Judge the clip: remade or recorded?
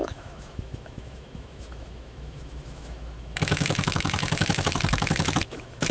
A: remade